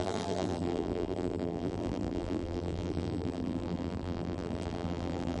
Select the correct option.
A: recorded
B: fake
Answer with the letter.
B